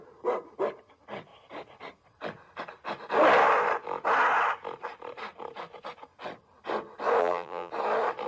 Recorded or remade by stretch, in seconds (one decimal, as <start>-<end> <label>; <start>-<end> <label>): 0.0-7.2 recorded; 7.2-7.7 remade; 7.7-8.3 recorded